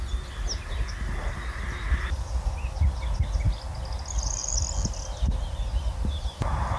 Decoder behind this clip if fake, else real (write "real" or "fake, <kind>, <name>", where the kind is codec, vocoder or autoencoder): real